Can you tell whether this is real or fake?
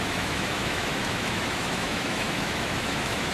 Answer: fake